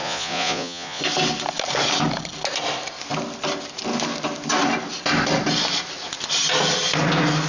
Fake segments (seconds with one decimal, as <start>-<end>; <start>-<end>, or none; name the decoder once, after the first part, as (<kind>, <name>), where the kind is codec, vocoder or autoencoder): 0.0-1.0 (vocoder, Vocos)